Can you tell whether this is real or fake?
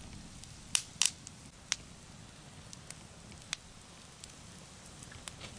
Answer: real